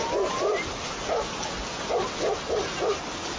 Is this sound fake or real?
real